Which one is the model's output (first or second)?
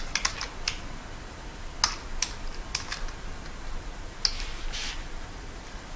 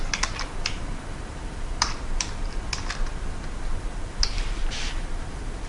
second